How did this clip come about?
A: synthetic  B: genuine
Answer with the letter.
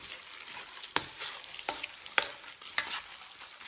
B